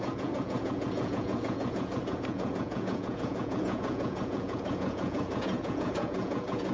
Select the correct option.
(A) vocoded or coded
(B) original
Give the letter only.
A